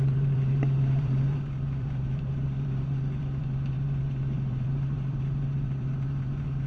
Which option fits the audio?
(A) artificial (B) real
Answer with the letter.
A